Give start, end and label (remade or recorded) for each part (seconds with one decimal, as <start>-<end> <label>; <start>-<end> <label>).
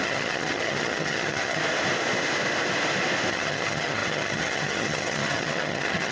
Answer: 0.0-1.6 remade; 1.6-3.3 recorded; 3.3-6.1 remade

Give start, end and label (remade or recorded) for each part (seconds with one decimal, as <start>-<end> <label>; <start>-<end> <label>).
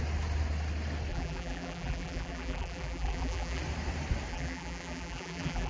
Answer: 0.0-1.1 recorded; 1.1-3.6 remade; 3.6-4.3 recorded; 4.3-5.7 remade